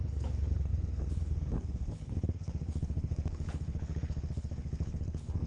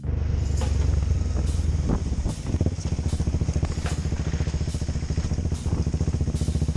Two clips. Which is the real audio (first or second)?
second